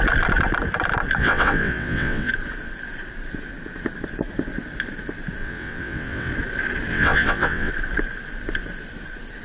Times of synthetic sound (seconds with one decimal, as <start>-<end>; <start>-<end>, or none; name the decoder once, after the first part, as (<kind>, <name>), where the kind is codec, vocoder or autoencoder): 1.2-2.3 (vocoder, WaveNeXt); 5.4-6.3; 6.9-7.7